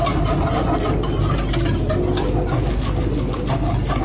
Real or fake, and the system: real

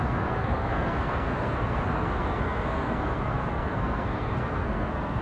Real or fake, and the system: fake, codec, SNAC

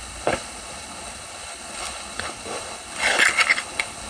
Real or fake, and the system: fake, codec, HILCodec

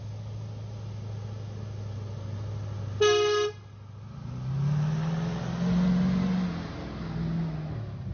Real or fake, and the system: real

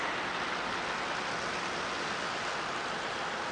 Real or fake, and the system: real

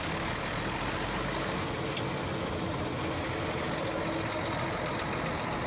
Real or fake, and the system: real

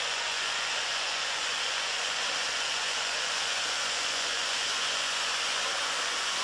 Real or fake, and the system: fake, vocoder, Vocos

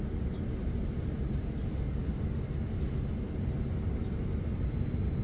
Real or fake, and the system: real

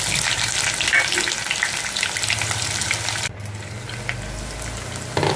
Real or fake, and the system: real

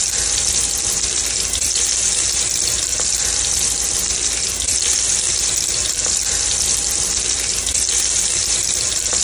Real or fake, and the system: fake, vocoder, BigVGAN v2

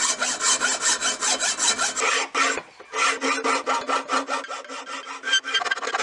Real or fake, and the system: real